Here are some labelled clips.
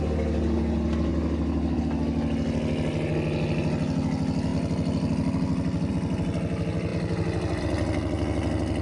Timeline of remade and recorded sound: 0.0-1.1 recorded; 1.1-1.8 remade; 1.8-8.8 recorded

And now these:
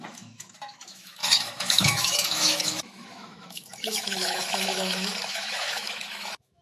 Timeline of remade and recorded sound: 0.0-6.6 remade

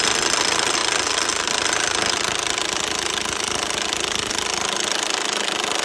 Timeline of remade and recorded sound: 0.0-5.8 recorded

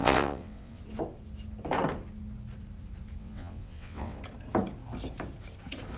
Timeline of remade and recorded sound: 0.0-0.8 remade; 0.8-3.2 recorded; 3.2-4.2 remade; 4.2-6.0 recorded

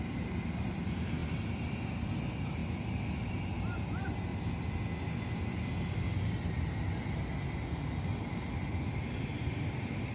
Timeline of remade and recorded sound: 0.0-2.6 remade; 2.6-3.3 recorded; 3.3-4.3 remade; 4.3-9.2 recorded; 9.2-10.1 remade